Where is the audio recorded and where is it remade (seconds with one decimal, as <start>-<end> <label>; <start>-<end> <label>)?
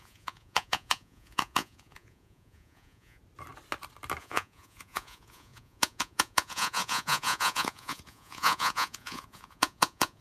0.0-3.2 remade; 3.2-4.2 recorded; 4.2-10.2 remade